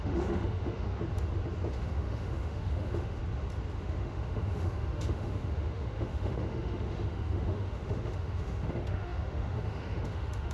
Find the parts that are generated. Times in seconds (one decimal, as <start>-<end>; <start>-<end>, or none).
0.0-1.0; 1.7-3.2; 3.8-10.5